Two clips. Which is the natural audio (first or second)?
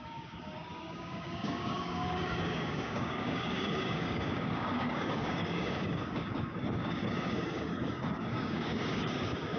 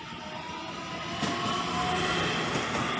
second